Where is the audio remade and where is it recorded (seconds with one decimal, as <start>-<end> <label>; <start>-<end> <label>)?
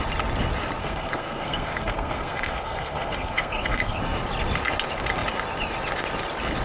0.0-0.8 recorded; 0.8-4.0 remade; 4.0-6.6 recorded